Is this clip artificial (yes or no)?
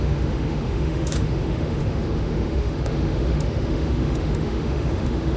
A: yes